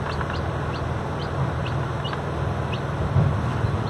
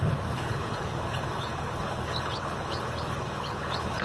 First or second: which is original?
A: first